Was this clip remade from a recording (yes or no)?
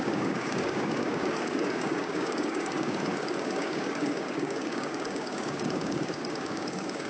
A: yes